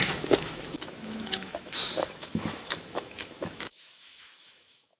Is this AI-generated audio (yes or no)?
yes